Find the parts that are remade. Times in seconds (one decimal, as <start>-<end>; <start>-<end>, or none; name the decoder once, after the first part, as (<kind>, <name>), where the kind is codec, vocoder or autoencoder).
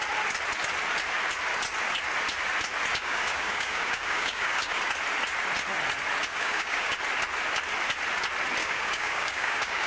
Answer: 2.9-4.8 (codec, DAC); 6.3-7.0; 8.6-9.9